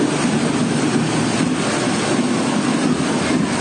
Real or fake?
real